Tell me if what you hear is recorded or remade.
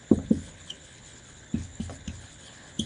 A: remade